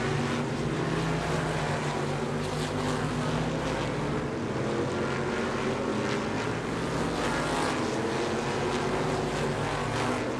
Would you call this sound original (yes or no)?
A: yes